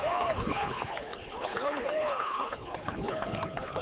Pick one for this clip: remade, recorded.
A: remade